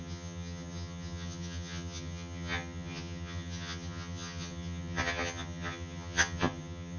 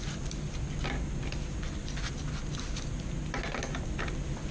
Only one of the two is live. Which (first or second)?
second